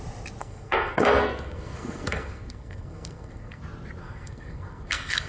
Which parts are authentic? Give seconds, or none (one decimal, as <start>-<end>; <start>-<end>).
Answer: 0.0-0.4; 3.6-4.0

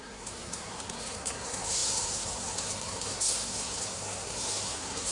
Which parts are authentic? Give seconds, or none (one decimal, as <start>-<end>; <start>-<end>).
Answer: none

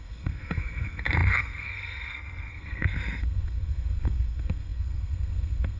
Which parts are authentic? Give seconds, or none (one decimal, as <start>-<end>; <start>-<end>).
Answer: none

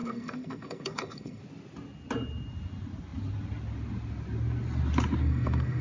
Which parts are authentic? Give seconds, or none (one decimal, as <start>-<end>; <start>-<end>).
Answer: 1.4-5.2

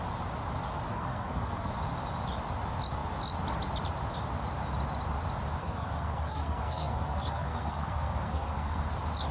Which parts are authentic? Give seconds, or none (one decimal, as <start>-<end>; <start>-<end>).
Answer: 0.0-0.9; 1.7-5.6; 8.9-9.3

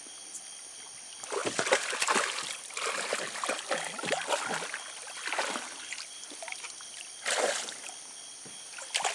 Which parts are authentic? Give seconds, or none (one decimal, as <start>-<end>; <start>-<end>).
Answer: 0.0-9.1

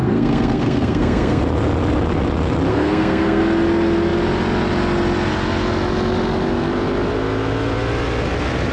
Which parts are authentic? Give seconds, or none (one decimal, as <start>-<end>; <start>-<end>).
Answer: 1.4-2.7; 3.4-8.7

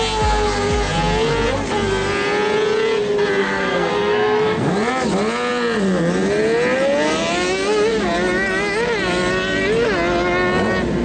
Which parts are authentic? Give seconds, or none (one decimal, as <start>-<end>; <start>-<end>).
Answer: 0.0-3.4; 4.7-11.0